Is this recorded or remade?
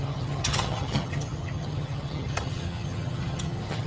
remade